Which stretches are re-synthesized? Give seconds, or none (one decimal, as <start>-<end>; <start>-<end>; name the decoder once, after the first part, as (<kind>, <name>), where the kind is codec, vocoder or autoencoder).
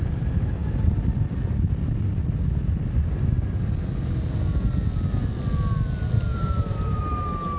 6.3-7.0 (vocoder, BigVGAN v2)